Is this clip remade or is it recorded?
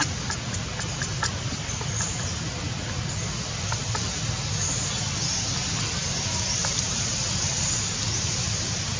recorded